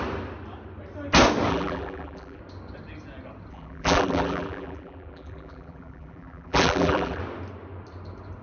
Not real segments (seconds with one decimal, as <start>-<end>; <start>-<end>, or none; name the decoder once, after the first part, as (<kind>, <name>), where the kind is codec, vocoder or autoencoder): 1.5-2.4 (vocoder, BigVGAN v2); 3.5-7.2